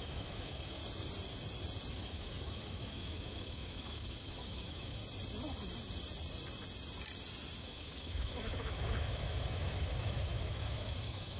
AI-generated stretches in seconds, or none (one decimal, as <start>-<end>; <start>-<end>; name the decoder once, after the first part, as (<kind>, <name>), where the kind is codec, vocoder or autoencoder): 0.0-0.8 (autoencoder, DAC-VAE); 1.9-5.0; 7.6-11.4